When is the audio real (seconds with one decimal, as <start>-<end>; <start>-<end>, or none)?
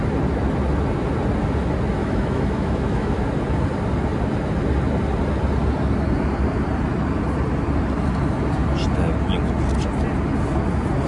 0.0-2.0; 3.2-11.1